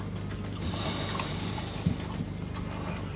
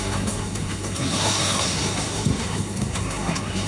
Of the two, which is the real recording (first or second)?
first